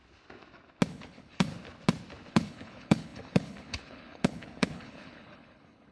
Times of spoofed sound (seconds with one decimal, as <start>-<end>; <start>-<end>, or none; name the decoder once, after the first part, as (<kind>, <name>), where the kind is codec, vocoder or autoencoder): 0.9-1.5 (codec, HILCodec); 2.3-5.9